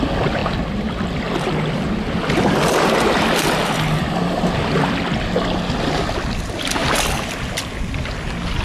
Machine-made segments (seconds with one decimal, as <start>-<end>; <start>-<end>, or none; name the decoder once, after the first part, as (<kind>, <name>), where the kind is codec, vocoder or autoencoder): none